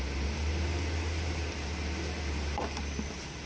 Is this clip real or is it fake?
real